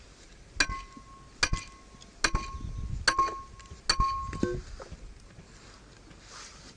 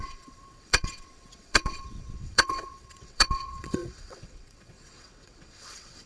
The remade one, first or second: second